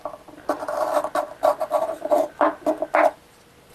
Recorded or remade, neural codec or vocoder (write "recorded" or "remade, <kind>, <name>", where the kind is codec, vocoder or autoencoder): recorded